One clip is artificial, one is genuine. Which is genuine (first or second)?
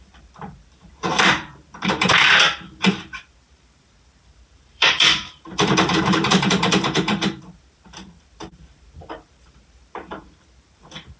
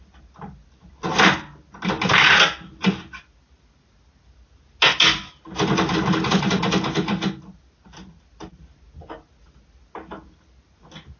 second